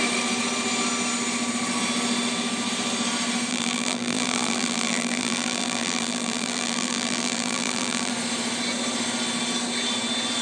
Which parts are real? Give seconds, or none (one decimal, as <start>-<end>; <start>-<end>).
0.0-3.5; 8.1-10.4